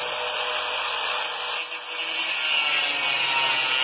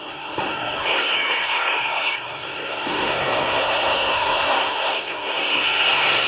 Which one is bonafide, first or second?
first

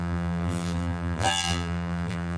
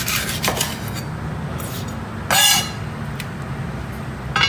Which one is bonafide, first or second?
second